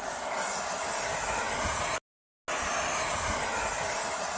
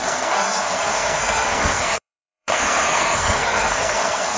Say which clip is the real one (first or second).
first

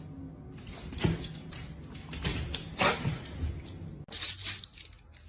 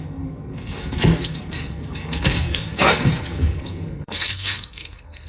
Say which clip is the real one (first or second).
first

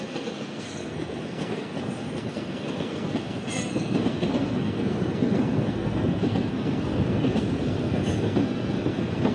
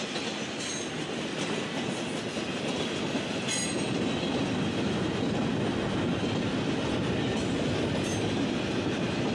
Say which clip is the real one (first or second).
second